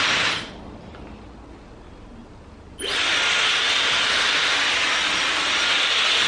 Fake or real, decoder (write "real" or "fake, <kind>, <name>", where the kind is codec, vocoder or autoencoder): real